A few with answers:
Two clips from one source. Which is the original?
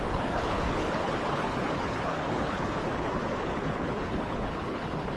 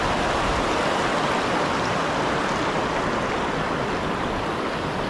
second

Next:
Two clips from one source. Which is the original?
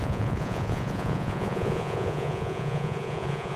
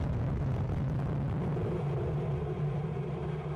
second